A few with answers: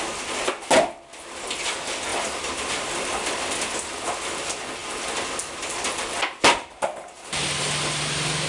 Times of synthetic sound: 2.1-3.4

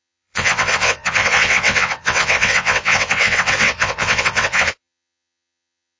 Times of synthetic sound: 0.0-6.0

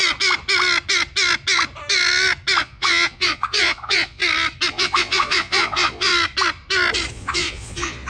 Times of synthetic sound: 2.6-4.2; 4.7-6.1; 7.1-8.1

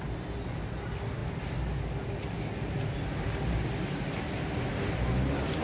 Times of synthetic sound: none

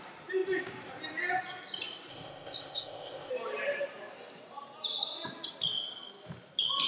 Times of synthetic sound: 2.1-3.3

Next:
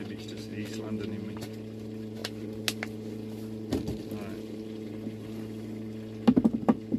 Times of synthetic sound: none